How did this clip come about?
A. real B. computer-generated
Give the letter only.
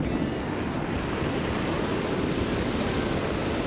A